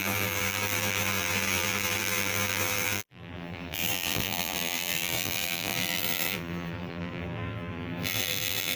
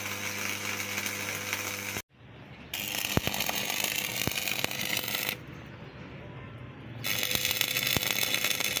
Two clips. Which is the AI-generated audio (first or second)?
first